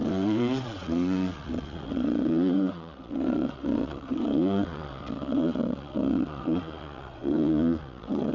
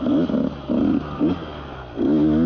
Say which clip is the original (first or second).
second